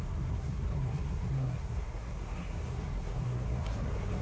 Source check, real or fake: fake